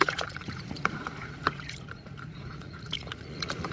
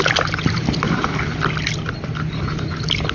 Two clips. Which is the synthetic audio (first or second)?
first